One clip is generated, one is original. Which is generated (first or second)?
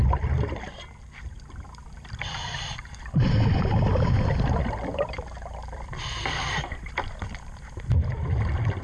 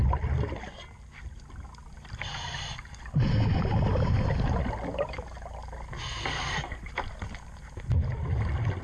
first